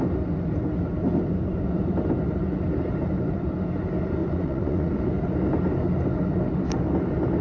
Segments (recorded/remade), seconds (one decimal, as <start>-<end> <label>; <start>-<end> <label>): 0.0-4.2 recorded; 4.2-5.0 remade; 5.0-7.4 recorded